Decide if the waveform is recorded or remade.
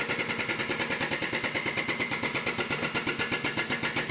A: recorded